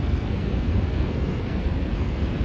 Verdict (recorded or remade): remade